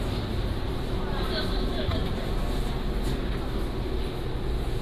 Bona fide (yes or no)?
yes